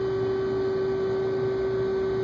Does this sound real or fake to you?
real